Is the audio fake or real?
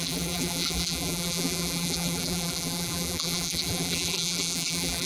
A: fake